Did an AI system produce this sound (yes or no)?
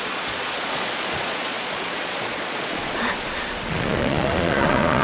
yes